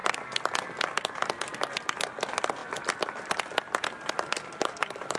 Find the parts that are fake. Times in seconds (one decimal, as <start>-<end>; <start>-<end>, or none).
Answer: 0.0-0.7; 2.6-5.2